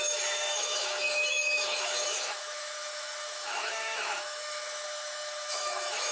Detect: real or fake fake